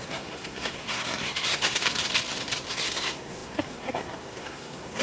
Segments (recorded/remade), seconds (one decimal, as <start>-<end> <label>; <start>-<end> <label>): 0.0-2.0 remade; 2.0-2.7 recorded; 2.7-5.0 remade